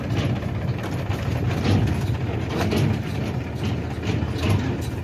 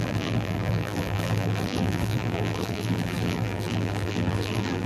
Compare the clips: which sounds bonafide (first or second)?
first